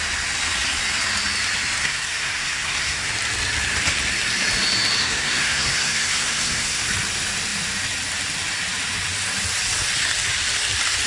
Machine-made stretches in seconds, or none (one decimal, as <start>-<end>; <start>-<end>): 1.8-3.1; 5.0-6.9